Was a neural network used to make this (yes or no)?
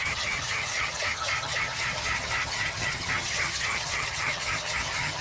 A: yes